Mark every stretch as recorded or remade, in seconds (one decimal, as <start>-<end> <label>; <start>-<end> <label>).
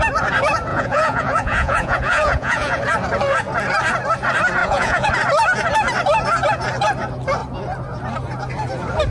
0.0-0.7 recorded; 0.7-2.8 remade; 2.8-4.6 recorded; 4.6-5.1 remade; 5.1-9.1 recorded